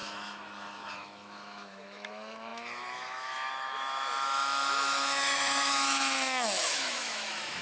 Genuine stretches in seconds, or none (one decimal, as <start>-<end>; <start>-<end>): none